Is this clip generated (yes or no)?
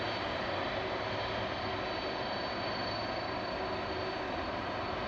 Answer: no